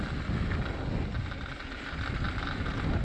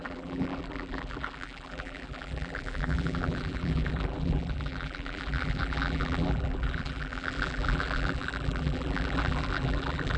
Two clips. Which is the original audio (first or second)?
first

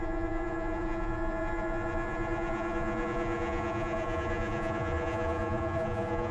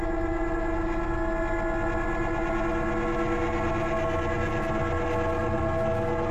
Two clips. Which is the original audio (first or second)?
second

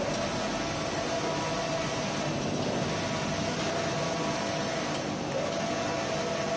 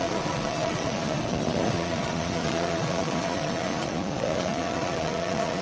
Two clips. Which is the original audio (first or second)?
first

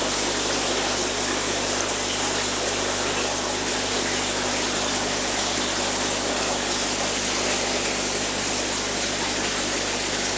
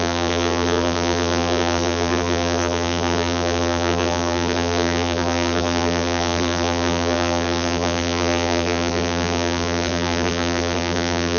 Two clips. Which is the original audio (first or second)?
first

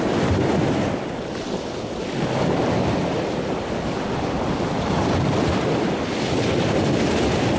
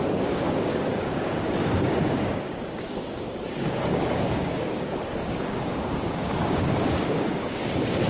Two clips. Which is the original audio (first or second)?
first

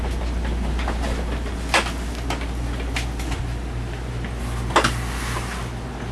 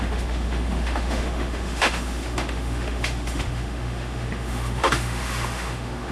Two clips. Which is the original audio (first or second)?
first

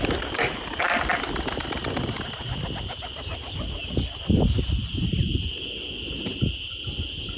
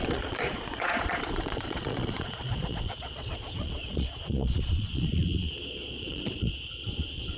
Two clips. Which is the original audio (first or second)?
first